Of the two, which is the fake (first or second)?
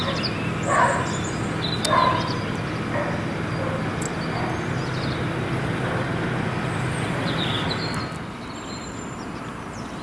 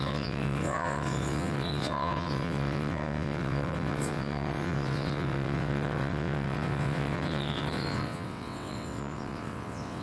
second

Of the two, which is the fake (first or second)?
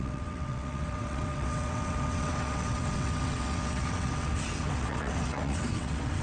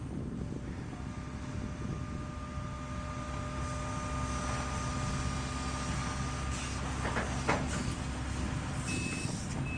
first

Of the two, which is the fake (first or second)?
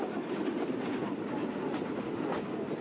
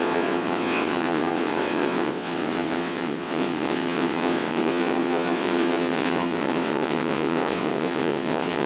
second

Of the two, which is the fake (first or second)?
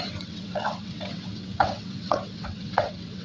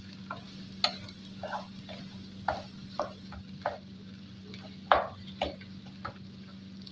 first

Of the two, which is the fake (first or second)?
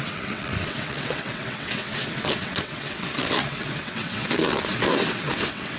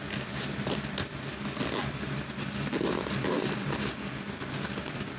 first